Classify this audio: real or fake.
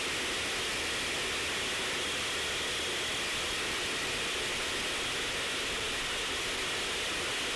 real